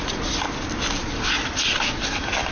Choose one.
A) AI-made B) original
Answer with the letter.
B